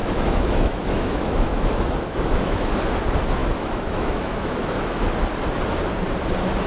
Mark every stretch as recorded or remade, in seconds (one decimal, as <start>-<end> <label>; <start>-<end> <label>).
0.0-2.7 remade; 2.7-3.4 recorded; 3.4-5.1 remade; 5.1-6.7 recorded